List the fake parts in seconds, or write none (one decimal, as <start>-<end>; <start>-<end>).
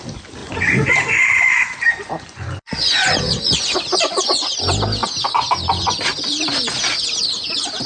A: 0.4-4.6